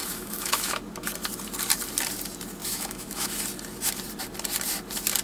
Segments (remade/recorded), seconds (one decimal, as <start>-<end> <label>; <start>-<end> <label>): 0.0-0.8 remade; 0.8-2.6 recorded; 2.6-3.4 remade; 3.4-5.2 recorded